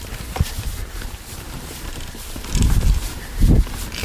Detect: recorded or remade remade